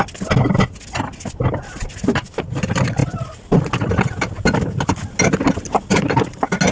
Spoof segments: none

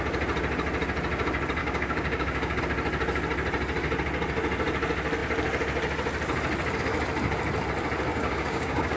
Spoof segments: 1.6-2.6 (codec, DAC); 8.1-9.0

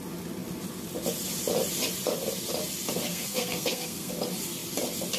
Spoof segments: 3.1-4.1 (codec, SNAC)

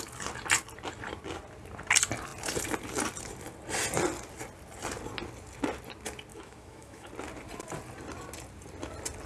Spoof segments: 6.3-7.1 (autoencoder, DAC-VAE)

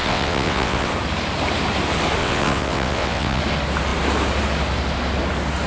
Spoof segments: 0.0-0.9 (vocoder, WaveNeXt); 2.2-3.4

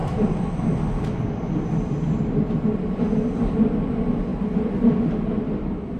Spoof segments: none

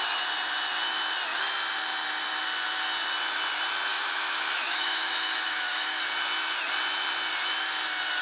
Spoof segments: 3.9-6.0 (autoencoder, DAC-VAE)

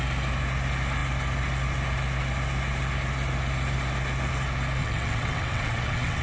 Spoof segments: 4.8-6.2 (vocoder, WaveNeXt)